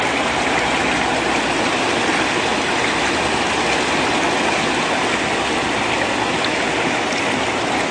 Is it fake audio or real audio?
real